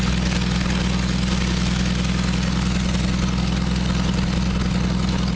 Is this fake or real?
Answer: real